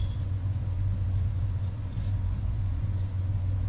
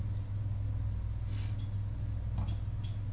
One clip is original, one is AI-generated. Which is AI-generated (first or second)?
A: first